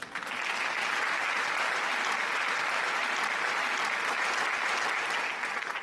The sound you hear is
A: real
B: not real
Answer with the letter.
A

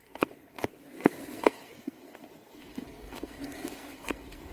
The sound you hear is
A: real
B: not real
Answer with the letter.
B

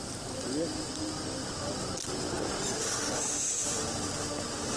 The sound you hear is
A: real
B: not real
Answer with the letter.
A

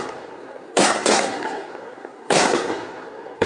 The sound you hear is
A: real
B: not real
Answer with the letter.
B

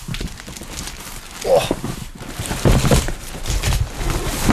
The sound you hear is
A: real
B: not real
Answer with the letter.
A